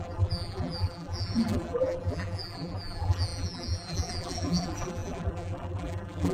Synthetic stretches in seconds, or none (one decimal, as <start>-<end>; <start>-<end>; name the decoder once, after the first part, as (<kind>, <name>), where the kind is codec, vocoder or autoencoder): 0.0-6.3 (vocoder, BigVGAN v2)